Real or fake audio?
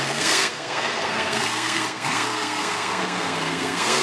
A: fake